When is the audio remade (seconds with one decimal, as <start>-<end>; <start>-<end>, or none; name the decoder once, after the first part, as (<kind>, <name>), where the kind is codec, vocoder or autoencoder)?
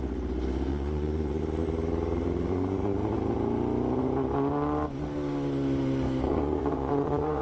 0.7-1.4 (vocoder, Vocos); 6.3-7.4